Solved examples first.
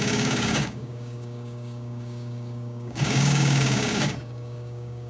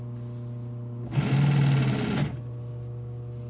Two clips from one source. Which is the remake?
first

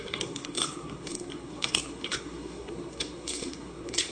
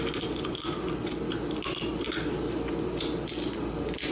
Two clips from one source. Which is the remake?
first